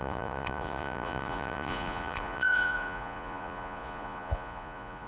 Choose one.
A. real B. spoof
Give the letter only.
B